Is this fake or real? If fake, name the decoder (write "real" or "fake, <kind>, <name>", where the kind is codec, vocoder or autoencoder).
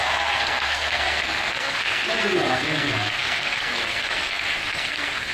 fake, codec, SNAC